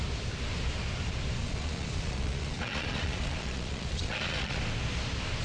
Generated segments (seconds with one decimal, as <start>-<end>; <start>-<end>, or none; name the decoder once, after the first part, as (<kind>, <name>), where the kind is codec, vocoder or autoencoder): 1.4-4.6 (vocoder, Vocos)